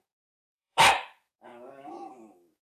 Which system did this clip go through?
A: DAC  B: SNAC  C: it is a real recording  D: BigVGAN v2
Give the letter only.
A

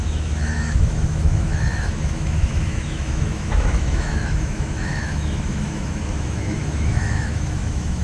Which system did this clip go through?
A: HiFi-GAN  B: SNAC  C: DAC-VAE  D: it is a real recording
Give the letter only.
C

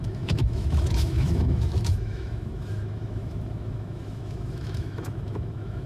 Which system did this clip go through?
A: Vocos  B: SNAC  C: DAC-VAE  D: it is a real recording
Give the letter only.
C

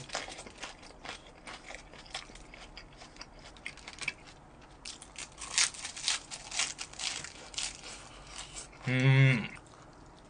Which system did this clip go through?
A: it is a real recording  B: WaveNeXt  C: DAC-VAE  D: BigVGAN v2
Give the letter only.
A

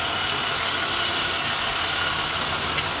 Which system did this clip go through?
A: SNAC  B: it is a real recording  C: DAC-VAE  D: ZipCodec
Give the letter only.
B